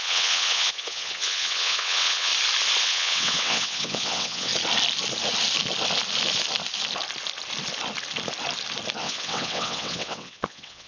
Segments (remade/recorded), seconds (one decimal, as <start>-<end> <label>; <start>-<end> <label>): 0.0-2.3 remade; 2.3-2.8 recorded; 2.8-4.5 remade; 4.5-9.0 recorded; 9.0-10.9 remade

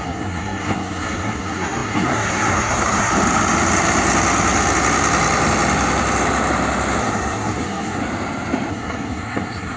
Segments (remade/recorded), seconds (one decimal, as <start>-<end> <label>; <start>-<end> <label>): 0.0-3.1 remade; 3.1-7.0 recorded; 7.0-8.0 remade; 8.0-8.7 recorded; 8.7-9.8 remade

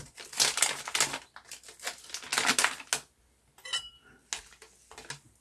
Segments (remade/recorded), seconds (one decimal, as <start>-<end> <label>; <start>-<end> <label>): 0.0-5.4 recorded

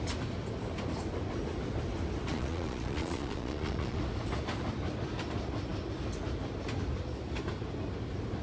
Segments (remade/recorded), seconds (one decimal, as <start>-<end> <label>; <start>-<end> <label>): 0.0-2.3 recorded; 2.3-4.0 remade; 4.0-8.4 recorded

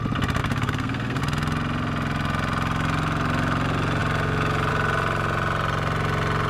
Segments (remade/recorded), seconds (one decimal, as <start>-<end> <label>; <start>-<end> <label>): 0.0-0.4 recorded; 0.4-1.2 remade; 1.2-6.5 recorded

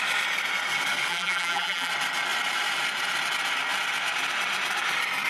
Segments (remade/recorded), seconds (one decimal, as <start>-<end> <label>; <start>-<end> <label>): 0.0-1.1 recorded; 1.1-1.9 remade; 1.9-5.3 recorded

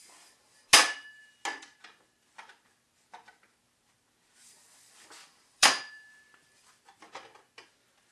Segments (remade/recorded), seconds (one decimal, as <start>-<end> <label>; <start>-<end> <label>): 0.0-5.2 recorded; 5.2-7.5 remade; 7.5-8.1 recorded

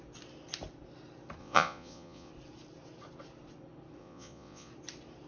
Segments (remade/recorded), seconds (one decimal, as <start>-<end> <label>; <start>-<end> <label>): 0.0-1.4 recorded; 1.4-2.3 remade; 2.3-4.0 recorded; 4.0-4.7 remade; 4.7-5.3 recorded